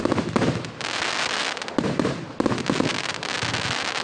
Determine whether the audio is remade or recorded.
recorded